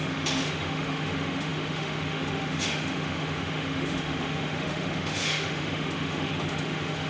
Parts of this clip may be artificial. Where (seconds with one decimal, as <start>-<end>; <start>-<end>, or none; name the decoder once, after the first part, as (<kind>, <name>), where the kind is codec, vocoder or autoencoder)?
0.0-7.1 (autoencoder, DAC-VAE)